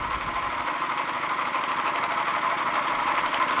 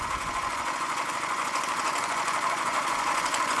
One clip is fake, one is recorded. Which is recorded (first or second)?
first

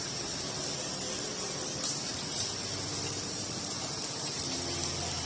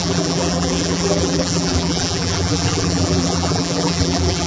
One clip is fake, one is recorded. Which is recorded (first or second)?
first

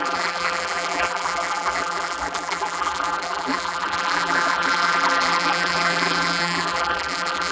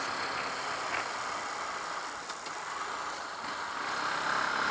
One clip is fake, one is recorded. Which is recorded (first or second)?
second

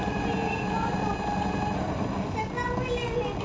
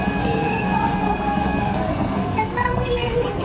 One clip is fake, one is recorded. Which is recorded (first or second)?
first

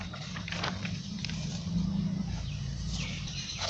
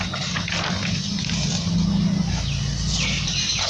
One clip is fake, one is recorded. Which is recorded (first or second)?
second